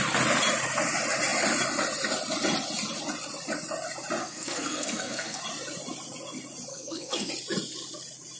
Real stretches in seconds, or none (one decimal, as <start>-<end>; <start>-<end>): 0.0-4.2; 5.4-6.7; 7.3-8.4

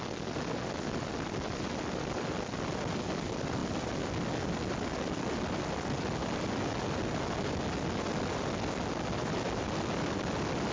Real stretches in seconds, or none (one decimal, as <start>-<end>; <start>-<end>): 0.0-10.7